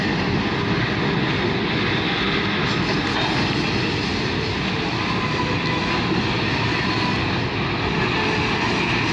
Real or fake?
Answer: real